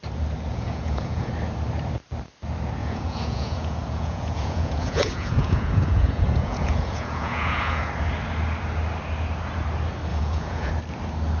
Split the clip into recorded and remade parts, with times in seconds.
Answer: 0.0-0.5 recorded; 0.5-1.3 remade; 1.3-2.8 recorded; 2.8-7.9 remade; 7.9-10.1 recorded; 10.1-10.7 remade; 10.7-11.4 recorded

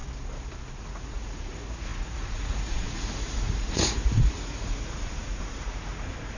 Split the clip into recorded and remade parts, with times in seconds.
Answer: 0.0-0.8 recorded; 0.8-6.4 remade

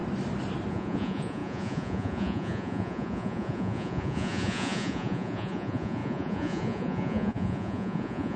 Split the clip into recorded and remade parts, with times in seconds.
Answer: 0.0-0.7 recorded; 0.7-8.4 remade

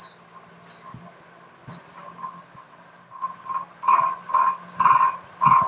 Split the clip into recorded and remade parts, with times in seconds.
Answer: 0.0-5.7 recorded

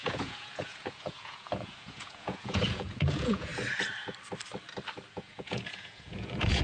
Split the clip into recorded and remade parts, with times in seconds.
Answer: 0.0-3.5 remade; 3.5-5.1 recorded; 5.1-6.6 remade

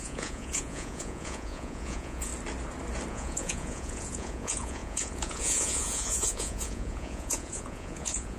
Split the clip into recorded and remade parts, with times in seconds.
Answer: 0.0-2.3 remade; 2.3-3.1 recorded; 3.1-8.4 remade

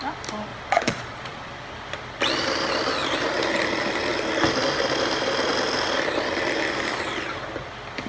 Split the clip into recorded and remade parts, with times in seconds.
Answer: 0.0-0.5 recorded; 0.5-1.5 remade; 1.5-8.1 recorded